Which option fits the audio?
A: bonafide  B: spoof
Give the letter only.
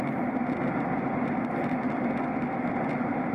A